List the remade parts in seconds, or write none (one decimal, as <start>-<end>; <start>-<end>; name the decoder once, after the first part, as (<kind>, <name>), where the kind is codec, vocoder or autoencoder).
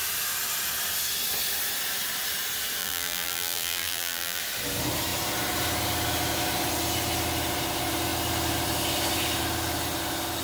2.8-4.4 (vocoder, BigVGAN v2)